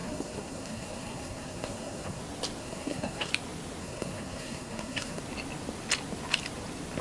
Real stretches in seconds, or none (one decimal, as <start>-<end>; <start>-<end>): 2.2-2.6; 3.3-3.8; 5.2-7.0